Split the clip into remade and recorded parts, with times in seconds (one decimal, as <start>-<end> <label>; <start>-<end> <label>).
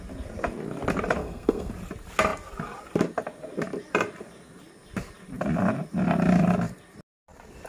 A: 0.0-1.2 recorded; 1.2-1.7 remade; 1.7-7.7 recorded